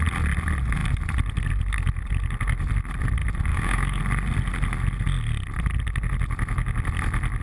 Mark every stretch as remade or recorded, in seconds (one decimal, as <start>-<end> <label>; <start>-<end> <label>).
0.0-3.5 recorded; 3.5-4.0 remade; 4.0-7.4 recorded